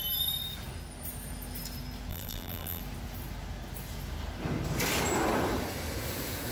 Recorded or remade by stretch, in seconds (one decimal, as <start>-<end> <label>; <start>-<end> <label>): 0.0-2.1 recorded; 2.1-2.8 remade; 2.8-6.5 recorded